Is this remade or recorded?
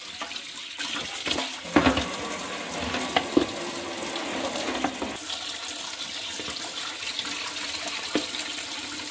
recorded